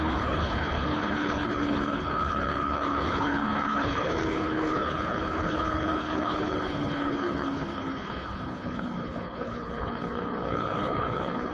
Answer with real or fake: fake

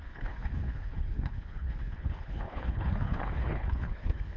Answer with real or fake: fake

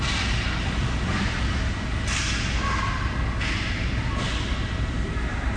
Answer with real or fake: real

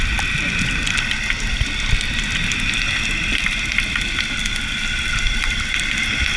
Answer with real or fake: real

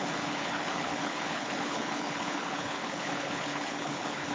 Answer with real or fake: fake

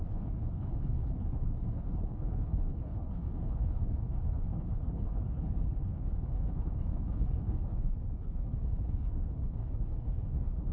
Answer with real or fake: fake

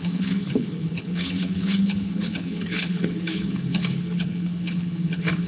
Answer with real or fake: fake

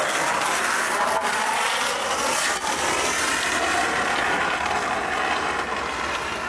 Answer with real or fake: real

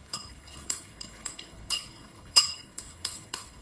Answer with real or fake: fake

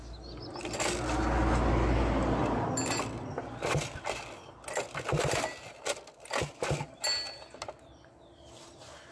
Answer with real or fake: real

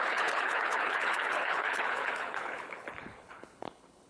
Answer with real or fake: fake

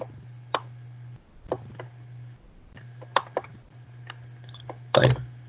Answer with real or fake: real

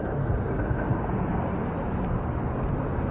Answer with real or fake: real